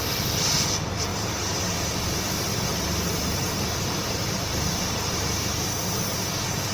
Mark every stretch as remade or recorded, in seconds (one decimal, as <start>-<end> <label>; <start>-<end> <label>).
0.0-1.1 recorded; 1.1-2.0 remade; 2.0-2.5 recorded; 2.5-6.0 remade; 6.0-6.7 recorded